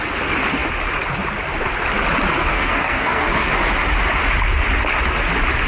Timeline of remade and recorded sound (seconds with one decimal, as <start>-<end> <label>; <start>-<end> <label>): 0.0-2.4 recorded; 2.4-3.5 remade; 3.5-5.7 recorded